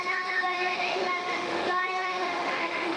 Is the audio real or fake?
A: fake